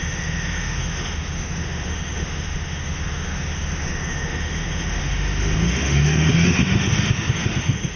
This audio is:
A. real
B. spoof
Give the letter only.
B